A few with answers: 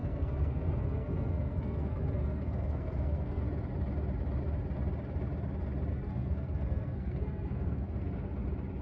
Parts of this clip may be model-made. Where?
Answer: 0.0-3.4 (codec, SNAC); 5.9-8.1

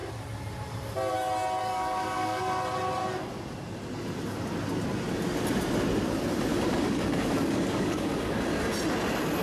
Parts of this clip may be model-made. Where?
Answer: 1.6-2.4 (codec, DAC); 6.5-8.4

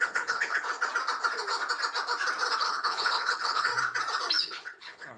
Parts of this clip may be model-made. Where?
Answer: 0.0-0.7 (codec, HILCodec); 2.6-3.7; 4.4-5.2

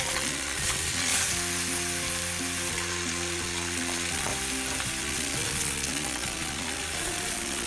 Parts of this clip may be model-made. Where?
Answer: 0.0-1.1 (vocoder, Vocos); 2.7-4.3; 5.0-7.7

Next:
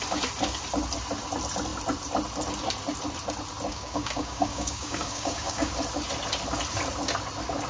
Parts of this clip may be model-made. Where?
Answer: 3.7-5.7 (codec, DAC)